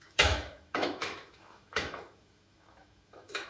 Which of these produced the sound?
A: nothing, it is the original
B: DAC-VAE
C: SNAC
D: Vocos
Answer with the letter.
B